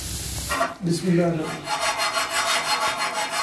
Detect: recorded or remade recorded